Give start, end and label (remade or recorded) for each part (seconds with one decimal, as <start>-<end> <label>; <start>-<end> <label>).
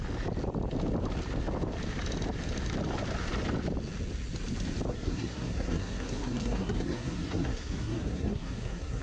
0.0-4.9 recorded; 4.9-9.0 remade